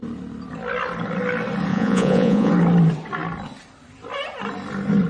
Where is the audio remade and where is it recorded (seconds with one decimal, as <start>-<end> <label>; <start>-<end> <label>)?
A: 0.0-1.7 recorded; 1.7-2.5 remade; 2.5-5.1 recorded